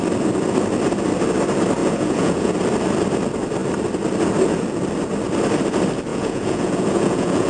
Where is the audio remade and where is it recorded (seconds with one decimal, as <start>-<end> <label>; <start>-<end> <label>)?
0.0-1.8 recorded; 1.8-2.5 remade; 2.5-6.1 recorded; 6.1-7.5 remade